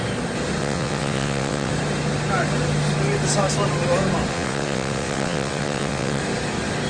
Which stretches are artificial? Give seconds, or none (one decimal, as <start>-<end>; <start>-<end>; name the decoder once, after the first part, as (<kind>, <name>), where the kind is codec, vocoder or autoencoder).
0.6-1.7 (vocoder, WaveNeXt); 4.3-6.2